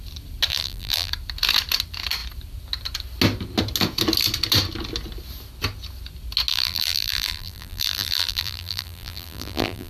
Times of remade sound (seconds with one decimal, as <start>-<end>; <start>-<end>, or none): 0.5-1.1; 6.5-9.9